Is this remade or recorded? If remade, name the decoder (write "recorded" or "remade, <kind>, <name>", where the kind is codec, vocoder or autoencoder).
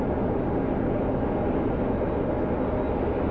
recorded